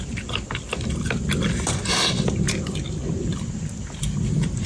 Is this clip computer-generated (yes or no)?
no